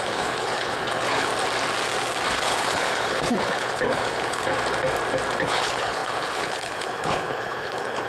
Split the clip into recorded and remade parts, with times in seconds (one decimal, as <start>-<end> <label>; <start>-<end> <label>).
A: 0.0-1.3 remade; 1.3-2.4 recorded; 2.4-4.5 remade; 4.5-5.4 recorded; 5.4-8.1 remade